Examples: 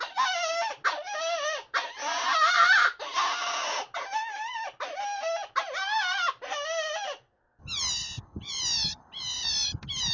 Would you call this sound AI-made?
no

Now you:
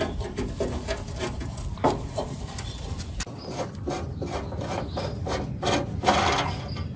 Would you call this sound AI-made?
no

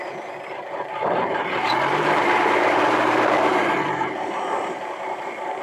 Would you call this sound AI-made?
yes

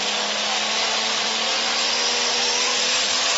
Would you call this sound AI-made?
no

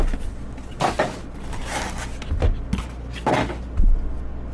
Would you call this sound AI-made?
no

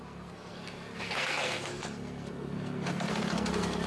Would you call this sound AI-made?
yes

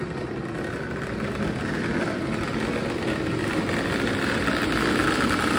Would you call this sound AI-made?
no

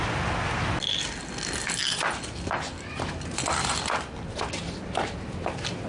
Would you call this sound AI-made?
no